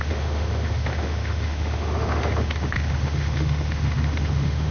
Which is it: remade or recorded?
remade